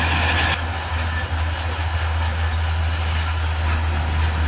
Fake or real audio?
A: real